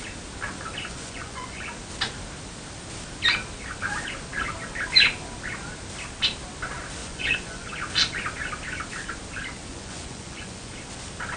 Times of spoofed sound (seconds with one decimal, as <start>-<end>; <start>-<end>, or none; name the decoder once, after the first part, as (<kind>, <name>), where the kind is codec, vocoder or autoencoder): 0.8-1.6 (vocoder, Vocos); 7.0-7.7; 9.7-10.7